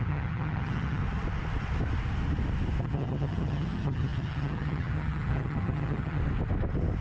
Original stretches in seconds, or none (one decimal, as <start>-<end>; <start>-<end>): 1.0-2.8; 6.2-7.0